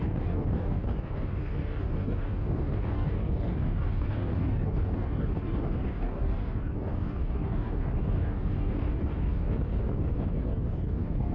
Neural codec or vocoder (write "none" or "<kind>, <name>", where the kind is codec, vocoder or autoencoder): codec, DAC